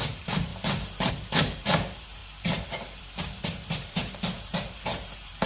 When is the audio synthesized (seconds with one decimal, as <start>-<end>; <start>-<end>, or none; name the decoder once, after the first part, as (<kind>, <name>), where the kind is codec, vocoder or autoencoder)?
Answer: 0.0-0.5 (vocoder, BigVGAN v2); 1.1-2.2; 3.0-5.5